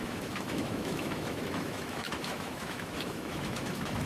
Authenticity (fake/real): fake